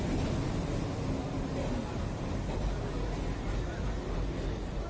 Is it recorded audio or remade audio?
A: recorded